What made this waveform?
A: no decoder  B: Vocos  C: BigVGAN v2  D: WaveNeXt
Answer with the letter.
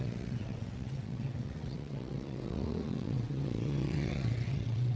D